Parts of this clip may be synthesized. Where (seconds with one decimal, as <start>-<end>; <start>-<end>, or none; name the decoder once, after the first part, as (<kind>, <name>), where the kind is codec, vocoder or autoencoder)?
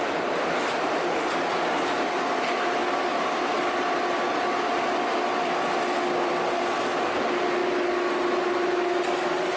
3.1-3.6 (vocoder, BigVGAN v2)